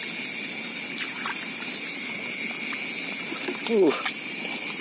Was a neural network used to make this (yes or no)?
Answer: no